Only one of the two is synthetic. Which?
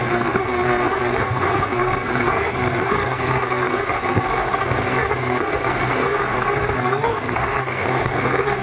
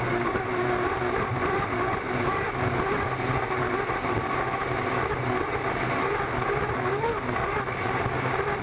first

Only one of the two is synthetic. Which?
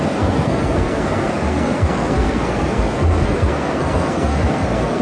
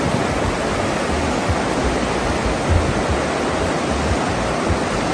first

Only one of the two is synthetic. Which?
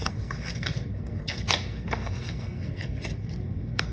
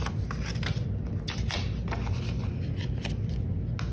first